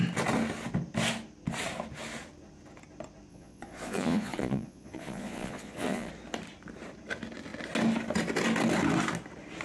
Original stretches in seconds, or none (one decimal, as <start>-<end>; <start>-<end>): 0.0-3.3; 6.1-9.6